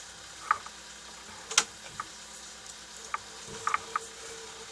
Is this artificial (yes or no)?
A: no